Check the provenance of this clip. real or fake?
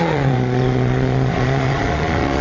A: fake